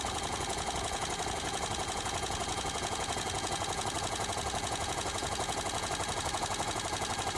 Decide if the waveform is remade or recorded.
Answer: remade